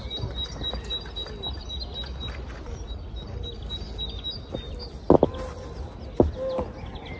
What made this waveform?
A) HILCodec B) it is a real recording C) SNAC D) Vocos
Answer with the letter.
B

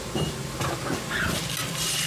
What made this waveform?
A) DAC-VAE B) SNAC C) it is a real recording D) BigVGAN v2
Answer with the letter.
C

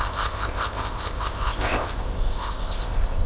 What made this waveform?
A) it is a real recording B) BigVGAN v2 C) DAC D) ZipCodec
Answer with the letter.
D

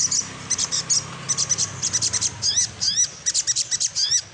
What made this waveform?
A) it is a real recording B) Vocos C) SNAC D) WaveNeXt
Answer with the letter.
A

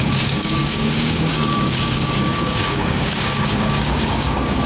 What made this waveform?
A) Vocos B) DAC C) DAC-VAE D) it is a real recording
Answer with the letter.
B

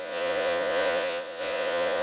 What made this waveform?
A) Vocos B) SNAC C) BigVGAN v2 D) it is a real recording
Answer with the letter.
A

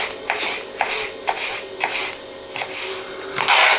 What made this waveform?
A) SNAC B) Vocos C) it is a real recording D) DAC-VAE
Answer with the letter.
C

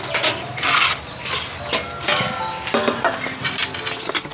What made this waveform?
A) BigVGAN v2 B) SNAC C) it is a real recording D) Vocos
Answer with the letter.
C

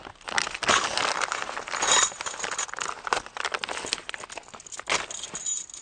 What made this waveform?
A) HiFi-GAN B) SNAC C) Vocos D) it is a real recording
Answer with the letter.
D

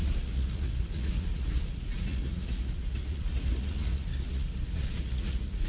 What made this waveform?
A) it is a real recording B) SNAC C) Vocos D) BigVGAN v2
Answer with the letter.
C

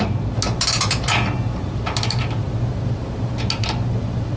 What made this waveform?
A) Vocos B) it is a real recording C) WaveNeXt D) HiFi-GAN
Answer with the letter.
B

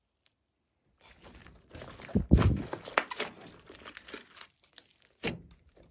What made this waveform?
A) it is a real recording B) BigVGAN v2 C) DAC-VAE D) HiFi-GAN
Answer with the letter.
A